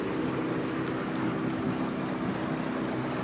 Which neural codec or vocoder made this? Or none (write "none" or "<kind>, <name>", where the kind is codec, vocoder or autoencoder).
none